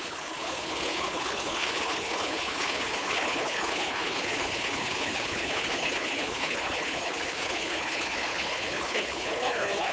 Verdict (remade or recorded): remade